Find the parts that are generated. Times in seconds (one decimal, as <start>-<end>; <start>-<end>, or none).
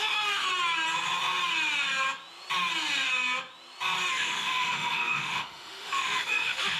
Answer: 0.0-0.5; 4.1-6.8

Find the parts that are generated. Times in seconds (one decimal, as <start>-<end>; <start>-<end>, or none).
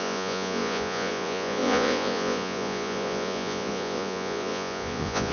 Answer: 0.0-5.3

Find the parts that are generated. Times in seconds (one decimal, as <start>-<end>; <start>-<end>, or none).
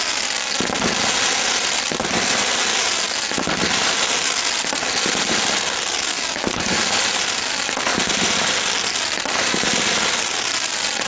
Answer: 6.1-7.0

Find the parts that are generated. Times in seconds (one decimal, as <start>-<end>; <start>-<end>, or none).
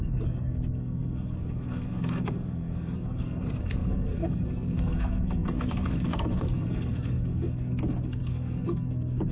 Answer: 0.0-9.3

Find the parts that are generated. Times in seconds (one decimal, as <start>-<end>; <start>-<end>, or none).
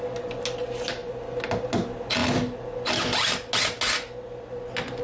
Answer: none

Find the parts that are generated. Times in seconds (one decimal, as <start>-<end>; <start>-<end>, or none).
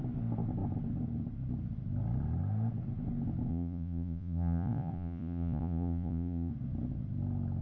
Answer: 3.5-6.5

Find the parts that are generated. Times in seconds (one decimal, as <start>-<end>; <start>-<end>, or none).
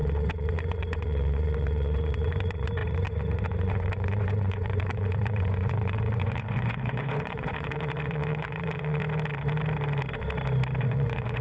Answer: 0.0-9.0; 10.8-11.4